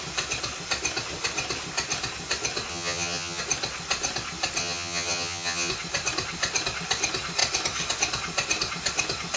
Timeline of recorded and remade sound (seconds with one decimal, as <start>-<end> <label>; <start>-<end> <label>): 0.0-2.7 recorded; 2.7-3.4 remade; 3.4-4.6 recorded; 4.6-5.7 remade; 5.7-9.4 recorded